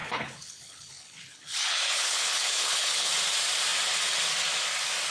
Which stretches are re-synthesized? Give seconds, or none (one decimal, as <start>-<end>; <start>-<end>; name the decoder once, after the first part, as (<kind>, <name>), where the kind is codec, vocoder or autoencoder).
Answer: 0.0-3.1 (codec, HILCodec)